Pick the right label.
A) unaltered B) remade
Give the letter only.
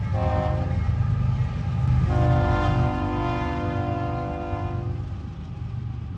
A